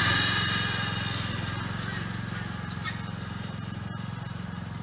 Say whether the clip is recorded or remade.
recorded